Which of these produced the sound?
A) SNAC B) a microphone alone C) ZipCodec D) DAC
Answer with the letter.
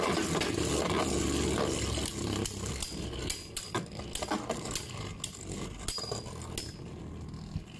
B